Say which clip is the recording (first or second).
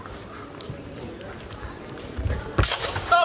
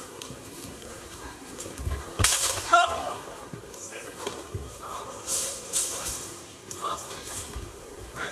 first